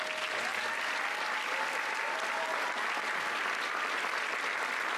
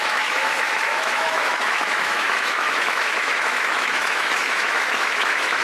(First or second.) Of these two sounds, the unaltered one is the first